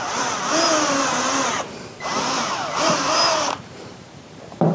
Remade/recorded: remade